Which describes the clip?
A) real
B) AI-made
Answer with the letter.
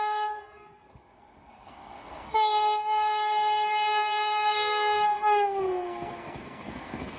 B